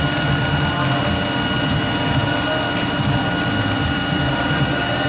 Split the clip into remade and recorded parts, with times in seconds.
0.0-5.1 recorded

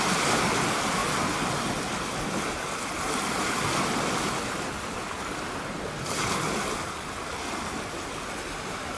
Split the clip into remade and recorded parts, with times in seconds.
0.0-9.0 recorded

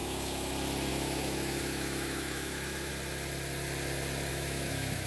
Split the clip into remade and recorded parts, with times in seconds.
0.0-0.5 remade; 0.5-0.9 recorded; 0.9-2.9 remade; 2.9-4.3 recorded; 4.3-5.1 remade

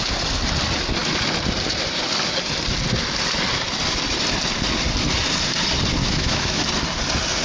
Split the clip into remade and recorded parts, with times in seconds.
0.0-6.0 recorded; 6.0-6.6 remade; 6.6-7.4 recorded

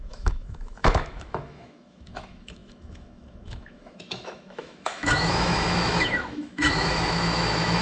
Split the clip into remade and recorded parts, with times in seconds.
0.0-7.8 remade